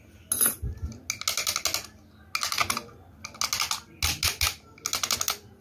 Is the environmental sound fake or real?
real